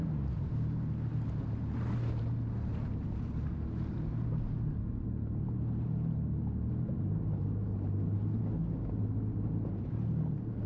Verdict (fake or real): real